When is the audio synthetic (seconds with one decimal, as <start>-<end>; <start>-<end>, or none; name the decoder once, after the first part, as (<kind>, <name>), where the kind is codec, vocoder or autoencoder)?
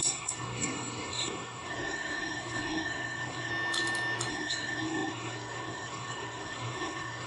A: 0.0-3.5 (codec, SNAC); 4.3-7.3